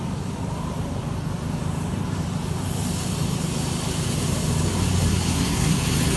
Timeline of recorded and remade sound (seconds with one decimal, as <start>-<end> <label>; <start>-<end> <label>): 0.0-5.1 recorded; 5.1-5.8 remade; 5.8-6.2 recorded